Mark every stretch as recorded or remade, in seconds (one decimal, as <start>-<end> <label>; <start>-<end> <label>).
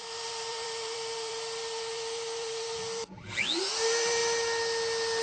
0.0-4.2 remade; 4.2-5.2 recorded